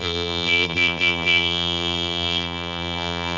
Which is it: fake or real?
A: fake